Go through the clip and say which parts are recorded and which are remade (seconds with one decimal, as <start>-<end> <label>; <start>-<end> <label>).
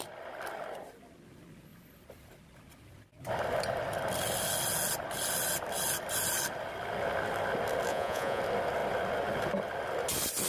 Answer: 0.0-7.9 recorded; 7.9-8.4 remade; 8.4-10.5 recorded